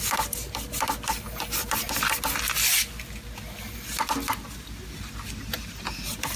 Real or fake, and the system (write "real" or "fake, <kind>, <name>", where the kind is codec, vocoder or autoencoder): real